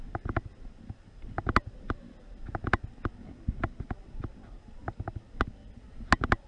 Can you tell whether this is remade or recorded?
recorded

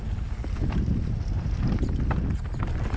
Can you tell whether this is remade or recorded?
recorded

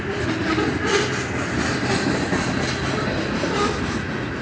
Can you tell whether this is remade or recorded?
recorded